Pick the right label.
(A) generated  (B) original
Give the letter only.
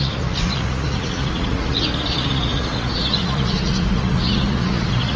A